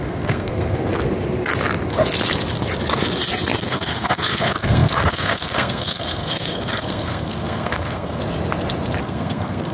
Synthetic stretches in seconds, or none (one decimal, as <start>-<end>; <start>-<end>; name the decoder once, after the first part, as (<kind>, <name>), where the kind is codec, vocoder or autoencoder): 0.0-0.9 (codec, SNAC); 3.6-8.2; 9.0-9.7